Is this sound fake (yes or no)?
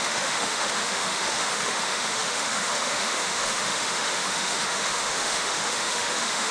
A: yes